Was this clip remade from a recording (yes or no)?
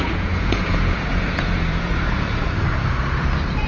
yes